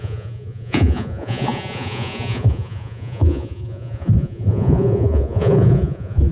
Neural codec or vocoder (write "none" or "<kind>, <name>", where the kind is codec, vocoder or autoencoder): vocoder, Vocos